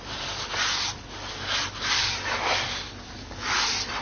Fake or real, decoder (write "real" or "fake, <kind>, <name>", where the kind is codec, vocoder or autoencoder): real